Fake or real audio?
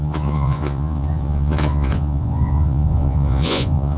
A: fake